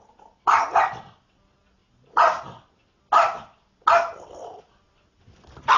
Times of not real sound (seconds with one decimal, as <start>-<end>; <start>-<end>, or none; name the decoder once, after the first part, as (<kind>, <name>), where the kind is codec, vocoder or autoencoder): none